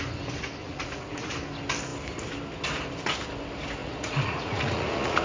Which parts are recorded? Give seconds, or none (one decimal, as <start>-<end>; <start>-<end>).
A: 0.0-0.6; 1.3-3.8